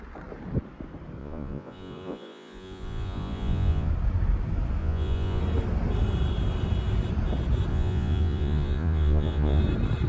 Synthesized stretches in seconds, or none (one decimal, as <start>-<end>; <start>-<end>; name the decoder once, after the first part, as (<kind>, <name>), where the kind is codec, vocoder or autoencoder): 1.2-3.9 (vocoder, Vocos); 4.8-5.4; 7.7-9.6